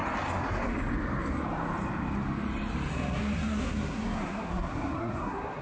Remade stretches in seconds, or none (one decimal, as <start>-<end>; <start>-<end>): 2.9-5.6